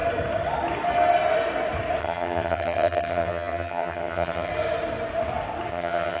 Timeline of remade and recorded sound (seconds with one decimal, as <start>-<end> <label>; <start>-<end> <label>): 0.0-2.0 recorded; 2.0-4.5 remade; 4.5-5.7 recorded; 5.7-6.2 remade